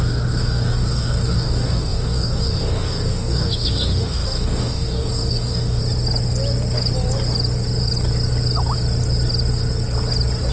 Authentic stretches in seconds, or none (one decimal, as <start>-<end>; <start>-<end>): 5.8-10.5

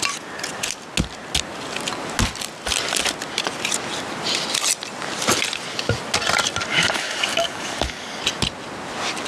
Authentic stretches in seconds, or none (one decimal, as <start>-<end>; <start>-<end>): 0.0-6.7; 8.2-9.3

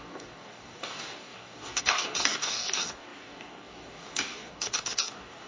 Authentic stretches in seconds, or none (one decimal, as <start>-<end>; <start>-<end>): none

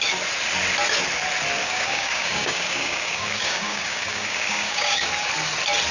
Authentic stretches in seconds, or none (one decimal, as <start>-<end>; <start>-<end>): 0.0-1.6; 5.1-5.9